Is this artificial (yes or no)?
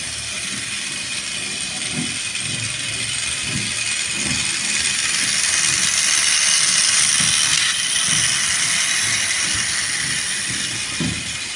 no